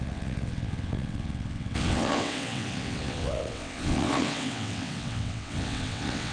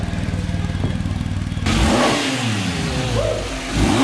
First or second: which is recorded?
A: second